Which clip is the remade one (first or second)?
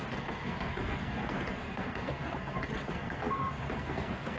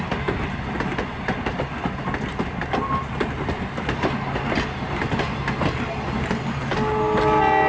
first